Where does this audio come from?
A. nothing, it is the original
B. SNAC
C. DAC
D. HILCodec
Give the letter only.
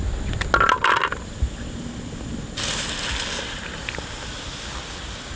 A